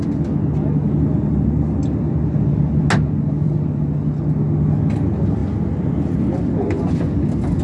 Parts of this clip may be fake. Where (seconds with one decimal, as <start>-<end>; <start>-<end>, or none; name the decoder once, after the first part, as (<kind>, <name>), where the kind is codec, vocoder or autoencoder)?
none